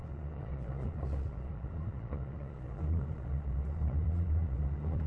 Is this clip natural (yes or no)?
no